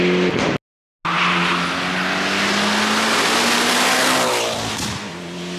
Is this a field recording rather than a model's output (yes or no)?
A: yes